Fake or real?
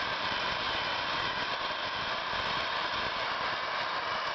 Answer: real